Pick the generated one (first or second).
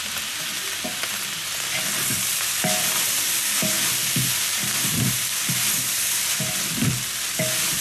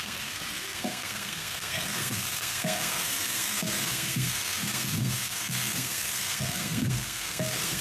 second